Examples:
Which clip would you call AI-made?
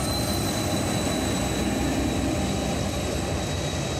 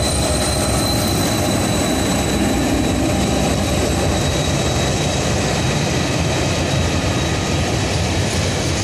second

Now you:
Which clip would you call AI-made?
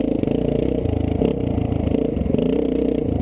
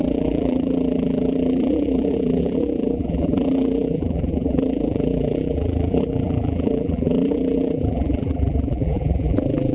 second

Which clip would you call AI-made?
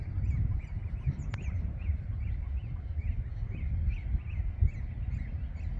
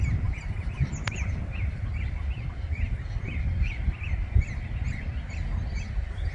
second